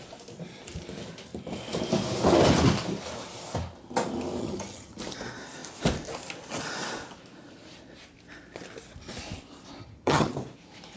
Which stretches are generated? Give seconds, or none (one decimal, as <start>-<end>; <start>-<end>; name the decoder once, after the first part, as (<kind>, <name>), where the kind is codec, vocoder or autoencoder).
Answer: 4.4-5.0 (vocoder, HiFi-GAN); 9.8-10.3